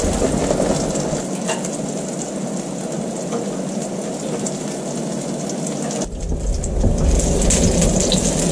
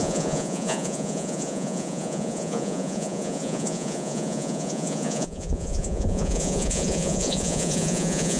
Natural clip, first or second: first